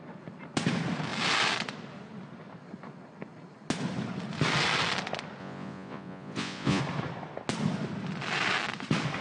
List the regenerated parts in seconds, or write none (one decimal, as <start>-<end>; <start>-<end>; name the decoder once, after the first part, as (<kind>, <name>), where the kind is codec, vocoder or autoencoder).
5.4-6.8 (vocoder, Vocos)